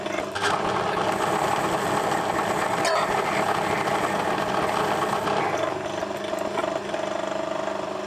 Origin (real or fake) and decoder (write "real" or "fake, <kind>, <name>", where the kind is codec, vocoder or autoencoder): real